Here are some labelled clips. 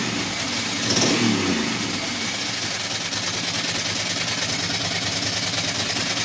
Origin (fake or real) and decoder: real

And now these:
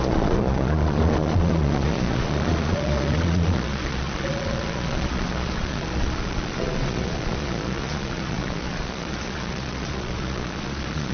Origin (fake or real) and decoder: fake, vocoder, Vocos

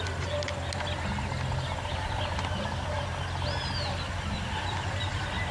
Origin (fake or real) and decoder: real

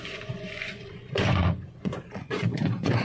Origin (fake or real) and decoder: fake, vocoder, Vocos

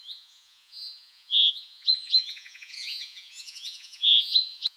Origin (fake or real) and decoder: fake, vocoder, Vocos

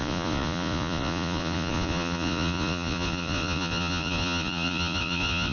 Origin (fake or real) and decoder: fake, vocoder, Vocos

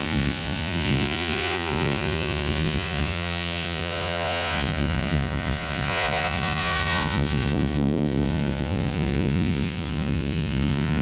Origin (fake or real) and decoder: fake, vocoder, Vocos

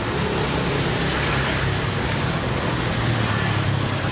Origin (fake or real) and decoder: real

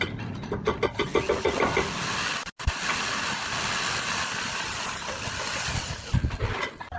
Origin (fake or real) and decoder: real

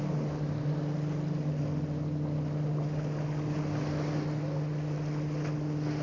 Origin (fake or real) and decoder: real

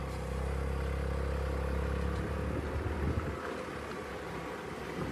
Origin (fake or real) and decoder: real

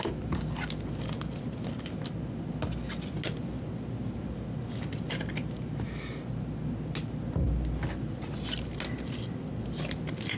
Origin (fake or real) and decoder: real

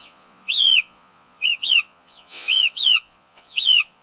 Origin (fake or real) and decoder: fake, vocoder, Vocos